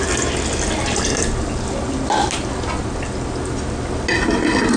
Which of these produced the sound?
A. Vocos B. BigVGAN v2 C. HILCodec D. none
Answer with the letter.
D